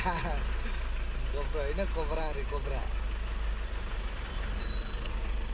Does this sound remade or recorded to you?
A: recorded